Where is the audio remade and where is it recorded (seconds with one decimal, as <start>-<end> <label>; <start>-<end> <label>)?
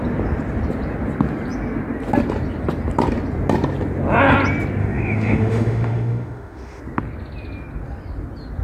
0.0-4.8 recorded; 4.8-6.8 remade; 6.8-8.6 recorded